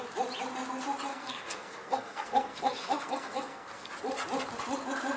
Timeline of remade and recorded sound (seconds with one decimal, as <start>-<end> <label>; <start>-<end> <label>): 0.0-1.1 recorded; 1.1-3.9 remade; 3.9-5.2 recorded